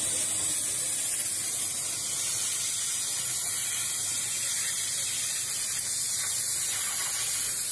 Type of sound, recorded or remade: recorded